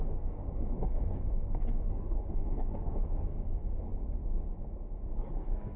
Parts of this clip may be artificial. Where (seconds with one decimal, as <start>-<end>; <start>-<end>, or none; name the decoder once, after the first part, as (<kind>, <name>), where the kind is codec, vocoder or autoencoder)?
0.0-3.9 (codec, SNAC); 5.3-5.8